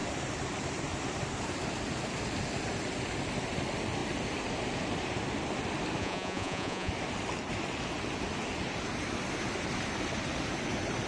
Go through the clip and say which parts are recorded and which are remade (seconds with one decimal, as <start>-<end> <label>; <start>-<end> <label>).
0.0-6.0 recorded; 6.0-6.9 remade; 6.9-11.1 recorded